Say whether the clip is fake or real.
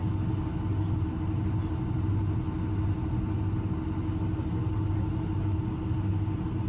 real